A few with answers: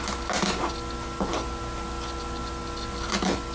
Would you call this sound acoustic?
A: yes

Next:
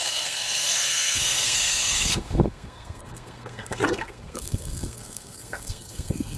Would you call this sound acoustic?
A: no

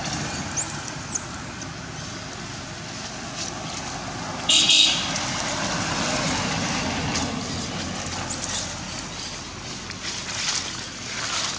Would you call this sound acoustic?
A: yes